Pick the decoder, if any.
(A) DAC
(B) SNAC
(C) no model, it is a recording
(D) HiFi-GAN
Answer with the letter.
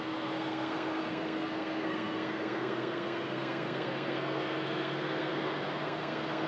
B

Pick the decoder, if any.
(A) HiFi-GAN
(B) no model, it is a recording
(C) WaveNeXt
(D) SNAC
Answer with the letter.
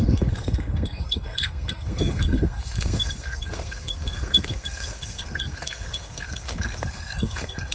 D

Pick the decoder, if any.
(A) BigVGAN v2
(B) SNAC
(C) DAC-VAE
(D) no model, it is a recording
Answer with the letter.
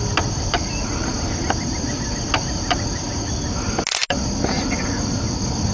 D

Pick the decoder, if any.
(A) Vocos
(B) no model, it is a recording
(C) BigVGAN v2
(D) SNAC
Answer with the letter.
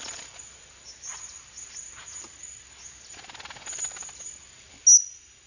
B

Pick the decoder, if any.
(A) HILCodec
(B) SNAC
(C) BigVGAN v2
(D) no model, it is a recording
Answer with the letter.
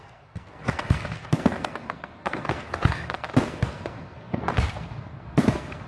B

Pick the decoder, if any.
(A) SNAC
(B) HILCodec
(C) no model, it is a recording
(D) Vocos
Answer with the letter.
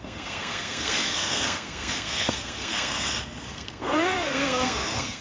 A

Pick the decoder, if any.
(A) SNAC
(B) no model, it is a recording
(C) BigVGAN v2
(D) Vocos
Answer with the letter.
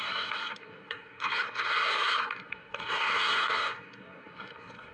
A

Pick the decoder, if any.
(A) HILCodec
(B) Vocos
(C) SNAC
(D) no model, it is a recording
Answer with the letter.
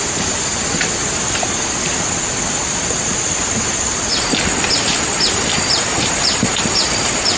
D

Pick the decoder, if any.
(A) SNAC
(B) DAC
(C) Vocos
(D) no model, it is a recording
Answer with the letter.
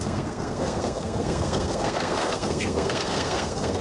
A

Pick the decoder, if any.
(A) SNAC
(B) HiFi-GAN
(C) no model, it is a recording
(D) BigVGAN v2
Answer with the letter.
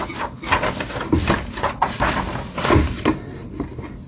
C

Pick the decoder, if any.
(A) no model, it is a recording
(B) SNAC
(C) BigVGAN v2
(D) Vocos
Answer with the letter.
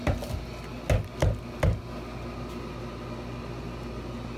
A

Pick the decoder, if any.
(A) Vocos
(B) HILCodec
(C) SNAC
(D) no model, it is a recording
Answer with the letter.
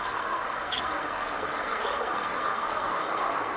C